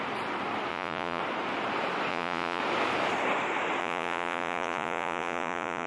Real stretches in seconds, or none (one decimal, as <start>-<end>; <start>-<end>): 0.0-0.7; 1.2-2.1; 2.6-3.8